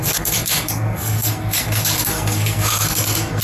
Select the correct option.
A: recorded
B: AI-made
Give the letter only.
B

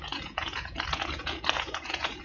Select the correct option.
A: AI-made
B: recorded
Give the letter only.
A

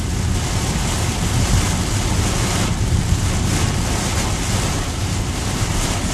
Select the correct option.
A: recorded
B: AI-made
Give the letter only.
A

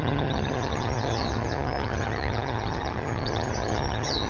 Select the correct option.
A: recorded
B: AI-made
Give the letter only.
B